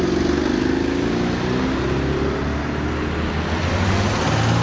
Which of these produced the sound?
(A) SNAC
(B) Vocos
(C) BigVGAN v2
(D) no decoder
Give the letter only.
D